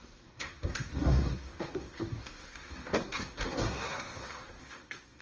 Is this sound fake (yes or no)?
yes